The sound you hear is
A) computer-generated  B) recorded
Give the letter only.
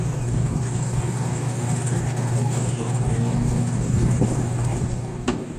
A